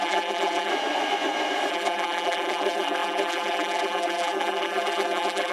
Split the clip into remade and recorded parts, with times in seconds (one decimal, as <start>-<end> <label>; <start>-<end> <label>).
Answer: 0.0-0.7 remade; 0.7-1.7 recorded; 1.7-5.5 remade